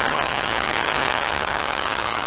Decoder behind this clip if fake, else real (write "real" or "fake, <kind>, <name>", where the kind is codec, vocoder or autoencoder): fake, vocoder, HiFi-GAN